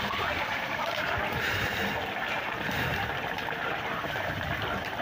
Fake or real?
fake